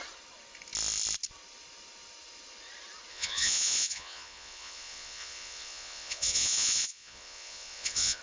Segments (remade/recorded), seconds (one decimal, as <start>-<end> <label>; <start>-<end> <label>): 0.0-3.1 recorded; 3.1-8.2 remade